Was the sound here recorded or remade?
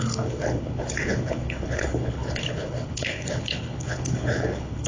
remade